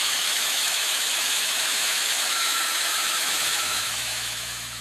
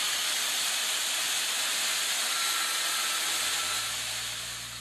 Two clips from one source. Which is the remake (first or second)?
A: first